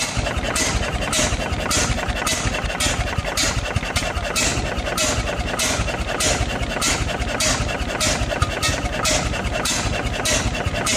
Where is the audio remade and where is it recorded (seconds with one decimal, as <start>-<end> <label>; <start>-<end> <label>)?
0.0-11.0 recorded